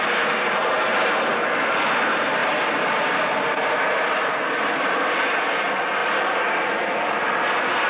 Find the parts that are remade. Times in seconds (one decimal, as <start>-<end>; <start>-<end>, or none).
none